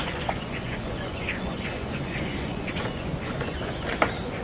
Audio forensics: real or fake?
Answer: fake